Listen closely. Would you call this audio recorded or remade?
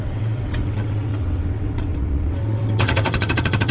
remade